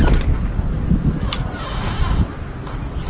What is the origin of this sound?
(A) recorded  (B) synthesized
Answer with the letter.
A